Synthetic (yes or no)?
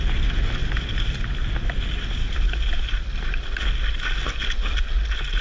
no